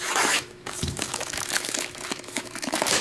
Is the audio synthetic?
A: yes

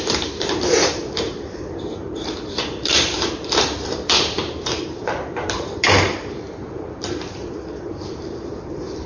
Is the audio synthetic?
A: yes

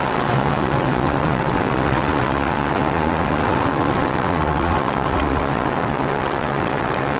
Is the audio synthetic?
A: yes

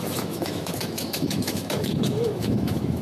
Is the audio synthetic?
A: yes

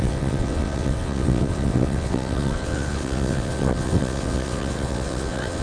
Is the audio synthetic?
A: yes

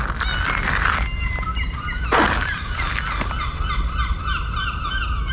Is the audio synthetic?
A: no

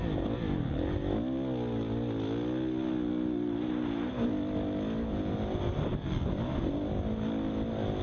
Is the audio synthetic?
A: no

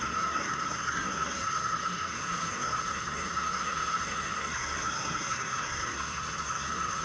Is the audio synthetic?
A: yes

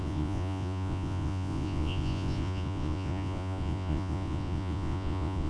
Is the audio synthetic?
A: yes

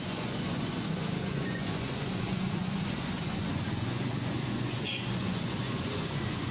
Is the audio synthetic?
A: yes